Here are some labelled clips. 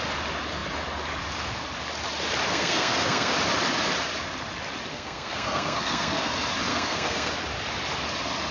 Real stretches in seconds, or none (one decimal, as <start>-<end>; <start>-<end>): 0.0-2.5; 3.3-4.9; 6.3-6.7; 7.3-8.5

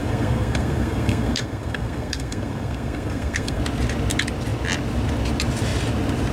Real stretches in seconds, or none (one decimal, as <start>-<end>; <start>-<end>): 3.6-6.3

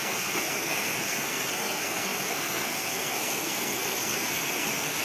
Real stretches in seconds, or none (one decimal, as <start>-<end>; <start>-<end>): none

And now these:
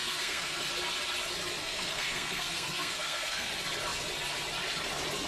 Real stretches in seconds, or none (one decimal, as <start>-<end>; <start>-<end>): 0.7-1.6; 3.5-5.3

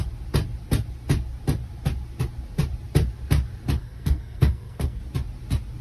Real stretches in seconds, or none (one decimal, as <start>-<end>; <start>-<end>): 0.0-3.8; 5.0-5.8

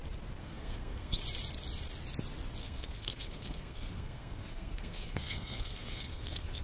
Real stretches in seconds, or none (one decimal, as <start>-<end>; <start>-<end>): 0.0-0.4; 1.2-2.6